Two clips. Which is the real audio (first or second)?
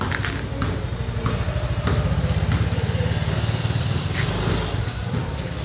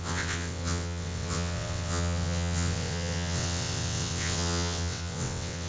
first